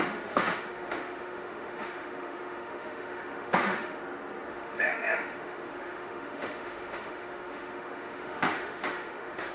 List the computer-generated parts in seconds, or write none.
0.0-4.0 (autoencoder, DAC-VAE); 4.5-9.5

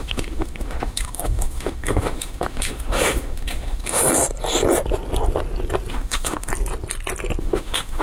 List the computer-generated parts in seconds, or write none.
0.0-4.0 (autoencoder, DAC-VAE); 5.9-6.5; 7.4-8.0

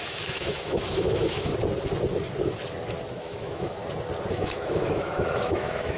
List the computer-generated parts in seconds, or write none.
0.0-1.5 (autoencoder, DAC-VAE); 3.2-3.8; 4.3-6.0

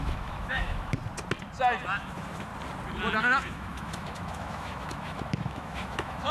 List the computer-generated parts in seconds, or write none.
0.0-1.0 (autoencoder, DAC-VAE); 2.0-2.5; 3.2-6.3

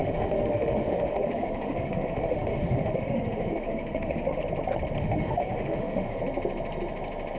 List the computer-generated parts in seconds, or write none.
0.0-4.4 (autoencoder, DAC-VAE); 5.0-6.2

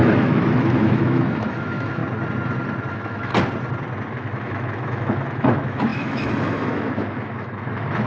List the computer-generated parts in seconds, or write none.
0.0-2.0 (autoencoder, DAC-VAE); 2.9-3.3; 4.1-8.1

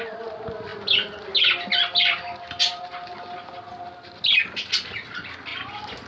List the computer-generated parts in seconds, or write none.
none